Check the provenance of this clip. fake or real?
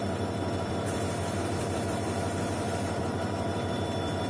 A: fake